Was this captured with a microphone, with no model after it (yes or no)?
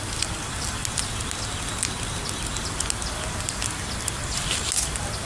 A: yes